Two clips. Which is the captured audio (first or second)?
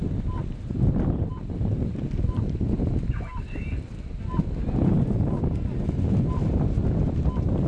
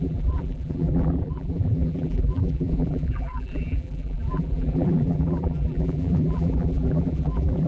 first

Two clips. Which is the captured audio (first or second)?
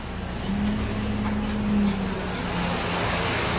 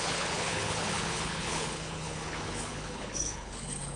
first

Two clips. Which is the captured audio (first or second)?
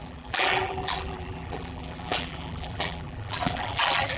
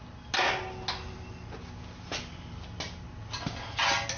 second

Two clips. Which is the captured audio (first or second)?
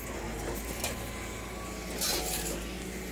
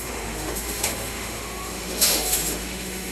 first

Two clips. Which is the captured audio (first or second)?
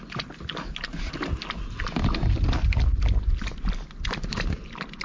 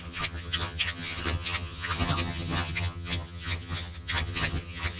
first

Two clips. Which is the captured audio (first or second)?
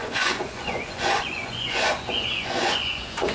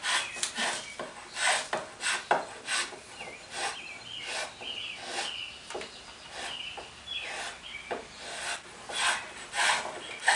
second